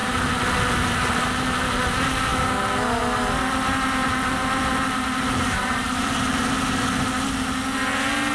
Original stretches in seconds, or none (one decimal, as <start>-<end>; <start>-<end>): 0.0-4.0; 6.5-8.3

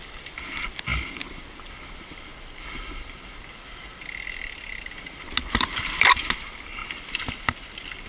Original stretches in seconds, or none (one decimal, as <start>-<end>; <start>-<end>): 0.0-6.8

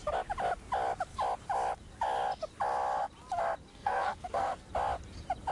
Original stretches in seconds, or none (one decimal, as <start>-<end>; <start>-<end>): 0.0-3.7; 4.7-5.5

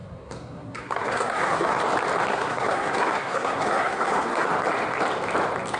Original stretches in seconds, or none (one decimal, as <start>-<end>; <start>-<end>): 1.8-2.3; 4.5-5.8

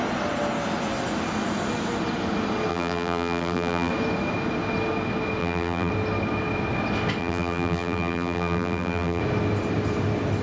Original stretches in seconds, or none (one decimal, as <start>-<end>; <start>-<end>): 0.0-2.7; 3.9-5.4; 5.9-7.2; 9.2-10.4